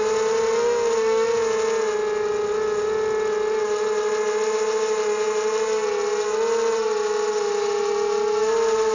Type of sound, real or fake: real